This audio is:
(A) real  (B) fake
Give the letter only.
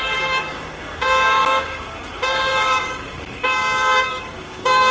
B